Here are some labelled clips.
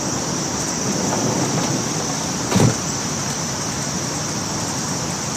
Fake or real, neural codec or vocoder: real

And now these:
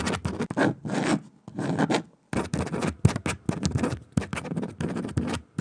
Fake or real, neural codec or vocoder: real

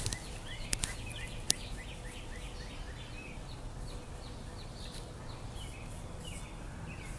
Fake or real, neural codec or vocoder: real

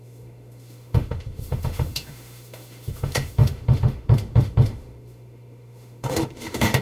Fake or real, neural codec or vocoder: fake, autoencoder, DAC-VAE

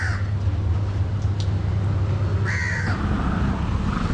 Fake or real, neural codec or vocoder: real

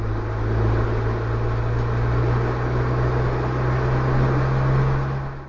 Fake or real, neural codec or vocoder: real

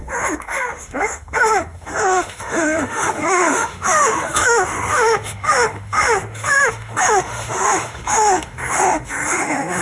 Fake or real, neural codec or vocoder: fake, autoencoder, DAC-VAE